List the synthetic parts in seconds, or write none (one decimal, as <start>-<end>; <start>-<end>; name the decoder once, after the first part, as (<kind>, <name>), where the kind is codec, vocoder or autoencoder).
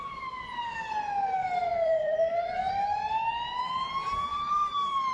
1.7-2.7 (vocoder, BigVGAN v2); 4.3-5.1